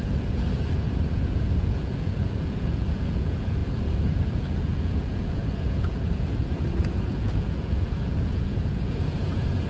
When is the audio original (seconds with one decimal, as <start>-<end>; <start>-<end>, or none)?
none